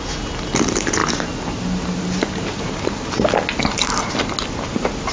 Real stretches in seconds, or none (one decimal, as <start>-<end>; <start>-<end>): 0.0-5.1